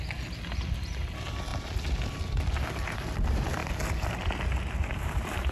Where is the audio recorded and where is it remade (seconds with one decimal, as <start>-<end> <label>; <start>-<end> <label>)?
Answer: 0.0-5.5 recorded